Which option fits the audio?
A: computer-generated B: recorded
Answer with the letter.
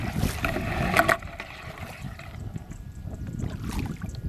A